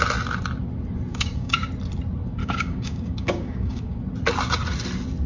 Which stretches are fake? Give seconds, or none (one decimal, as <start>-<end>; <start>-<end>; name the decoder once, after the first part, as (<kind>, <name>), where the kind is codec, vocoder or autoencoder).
1.1-1.7 (codec, DAC); 2.4-4.0